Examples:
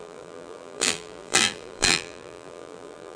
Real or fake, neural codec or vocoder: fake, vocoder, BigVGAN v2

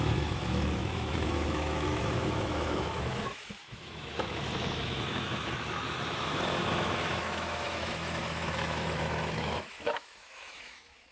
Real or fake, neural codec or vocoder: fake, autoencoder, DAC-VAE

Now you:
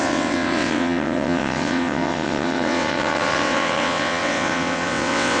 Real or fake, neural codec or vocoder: fake, vocoder, WaveNeXt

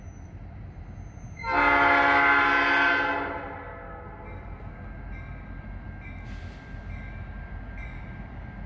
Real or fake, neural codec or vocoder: real